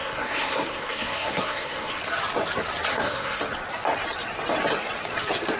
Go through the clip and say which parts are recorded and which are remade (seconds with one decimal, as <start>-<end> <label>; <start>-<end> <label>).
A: 0.0-2.0 remade; 2.0-2.9 recorded; 2.9-3.4 remade; 3.4-5.6 recorded